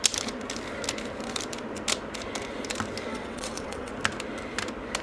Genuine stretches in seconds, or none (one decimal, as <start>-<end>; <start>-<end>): 0.0-3.1; 3.9-5.0